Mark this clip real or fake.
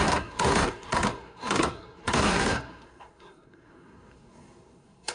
fake